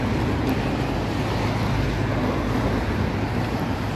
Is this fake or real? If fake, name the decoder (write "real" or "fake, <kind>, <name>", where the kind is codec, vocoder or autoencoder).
real